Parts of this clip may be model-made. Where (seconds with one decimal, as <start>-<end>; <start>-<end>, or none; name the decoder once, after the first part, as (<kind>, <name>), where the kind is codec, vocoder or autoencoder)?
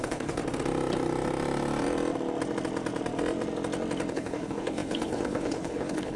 0.0-0.4 (codec, HILCodec); 4.1-6.2